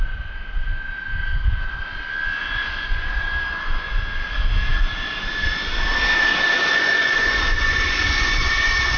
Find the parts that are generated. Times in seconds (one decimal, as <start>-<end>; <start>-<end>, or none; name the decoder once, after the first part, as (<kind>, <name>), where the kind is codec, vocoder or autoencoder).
2.4-3.9 (vocoder, Vocos); 6.7-9.0